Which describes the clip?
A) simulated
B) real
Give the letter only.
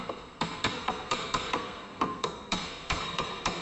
A